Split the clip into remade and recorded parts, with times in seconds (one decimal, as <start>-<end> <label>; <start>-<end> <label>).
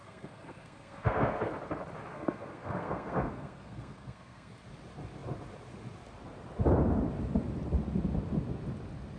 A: 0.0-1.5 remade; 1.5-2.1 recorded; 2.1-4.5 remade; 4.5-9.2 recorded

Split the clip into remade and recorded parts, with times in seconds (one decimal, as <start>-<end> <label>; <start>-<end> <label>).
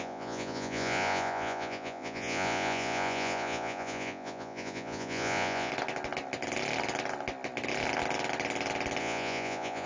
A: 0.0-5.7 remade; 5.7-9.0 recorded; 9.0-9.9 remade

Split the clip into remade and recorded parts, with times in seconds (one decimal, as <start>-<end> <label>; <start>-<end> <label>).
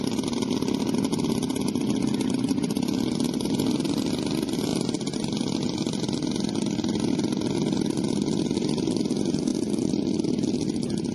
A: 0.0-11.1 recorded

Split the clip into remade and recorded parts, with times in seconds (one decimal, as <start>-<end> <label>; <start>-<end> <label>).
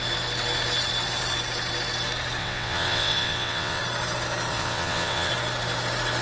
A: 0.0-2.4 recorded; 2.4-3.8 remade; 3.8-4.5 recorded; 4.5-5.3 remade; 5.3-6.2 recorded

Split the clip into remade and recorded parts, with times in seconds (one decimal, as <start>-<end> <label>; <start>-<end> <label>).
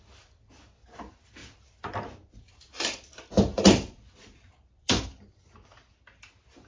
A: 0.0-1.4 recorded; 1.4-5.4 remade; 5.4-6.7 recorded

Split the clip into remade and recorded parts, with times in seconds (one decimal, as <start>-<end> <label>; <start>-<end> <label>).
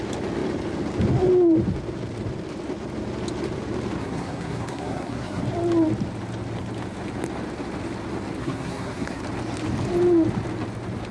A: 0.0-4.0 recorded; 4.0-5.4 remade; 5.4-8.4 recorded; 8.4-9.2 remade; 9.2-11.1 recorded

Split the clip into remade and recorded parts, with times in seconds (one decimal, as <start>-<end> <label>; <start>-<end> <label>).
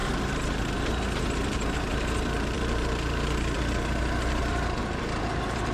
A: 0.0-5.7 remade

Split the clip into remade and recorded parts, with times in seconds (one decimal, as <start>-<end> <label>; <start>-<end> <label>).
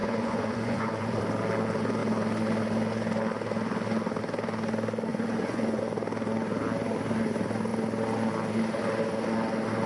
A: 0.0-1.2 remade; 1.2-5.1 recorded; 5.1-5.8 remade; 5.8-9.9 recorded